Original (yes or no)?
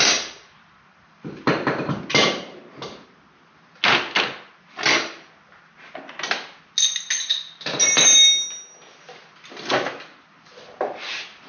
yes